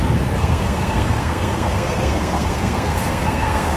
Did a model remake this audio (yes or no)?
yes